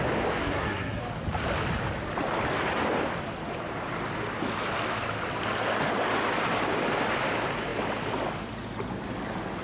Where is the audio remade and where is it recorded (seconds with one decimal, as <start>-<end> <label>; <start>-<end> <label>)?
0.0-0.4 recorded; 0.4-1.0 remade; 1.0-9.6 recorded